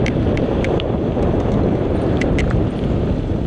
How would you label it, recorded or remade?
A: remade